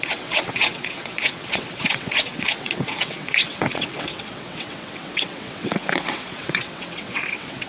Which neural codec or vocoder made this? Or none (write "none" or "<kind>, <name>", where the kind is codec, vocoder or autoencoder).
vocoder, WaveNeXt